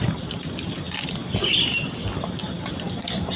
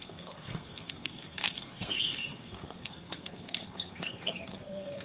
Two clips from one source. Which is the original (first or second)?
first